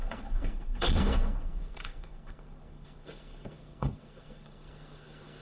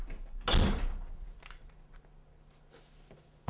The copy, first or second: first